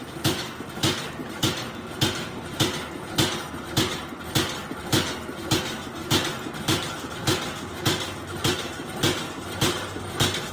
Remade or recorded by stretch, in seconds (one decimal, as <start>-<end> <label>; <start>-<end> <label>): 0.0-10.5 recorded